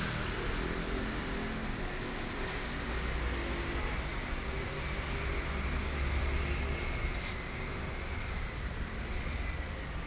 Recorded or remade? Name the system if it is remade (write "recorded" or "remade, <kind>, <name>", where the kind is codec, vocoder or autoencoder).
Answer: recorded